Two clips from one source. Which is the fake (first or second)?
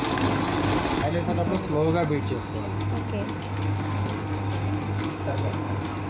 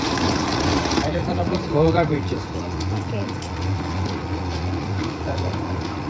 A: second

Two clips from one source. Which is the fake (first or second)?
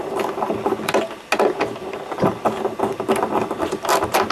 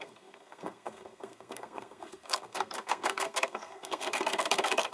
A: second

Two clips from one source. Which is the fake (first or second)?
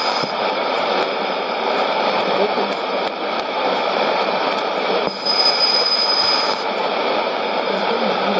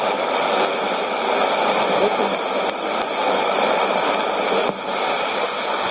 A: first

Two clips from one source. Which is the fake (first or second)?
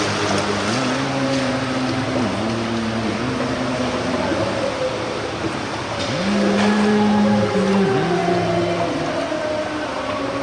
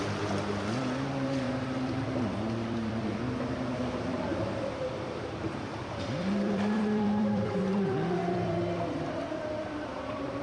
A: second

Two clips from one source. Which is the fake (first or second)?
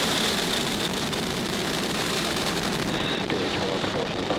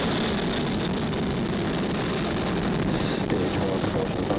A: first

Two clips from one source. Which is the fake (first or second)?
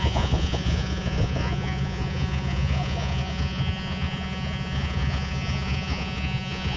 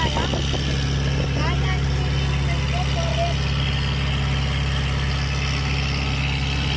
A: first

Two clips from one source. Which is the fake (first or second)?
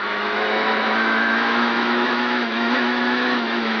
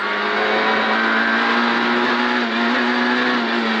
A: first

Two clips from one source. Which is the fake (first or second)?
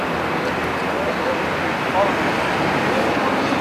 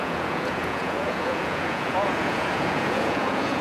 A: second